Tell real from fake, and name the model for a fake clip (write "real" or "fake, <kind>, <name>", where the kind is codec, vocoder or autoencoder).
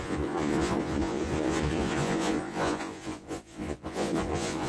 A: fake, vocoder, Vocos